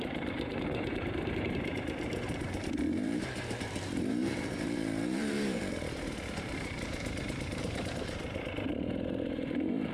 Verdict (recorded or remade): remade